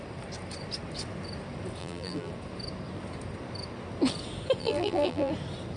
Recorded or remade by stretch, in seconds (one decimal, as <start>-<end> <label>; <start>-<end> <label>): 0.0-1.8 recorded; 1.8-2.3 remade; 2.3-4.6 recorded; 4.6-5.3 remade; 5.3-5.8 recorded

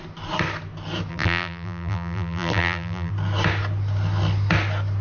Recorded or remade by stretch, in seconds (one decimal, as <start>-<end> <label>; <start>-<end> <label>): 0.0-1.1 recorded; 1.1-3.1 remade; 3.1-5.0 recorded

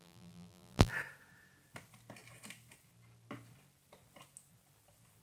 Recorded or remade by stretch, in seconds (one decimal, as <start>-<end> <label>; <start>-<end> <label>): 0.0-0.9 remade; 0.9-5.2 recorded

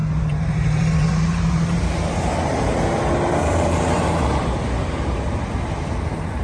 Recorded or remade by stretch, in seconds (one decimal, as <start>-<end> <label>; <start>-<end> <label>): 0.0-2.6 remade; 2.6-3.4 recorded; 3.4-4.4 remade; 4.4-6.4 recorded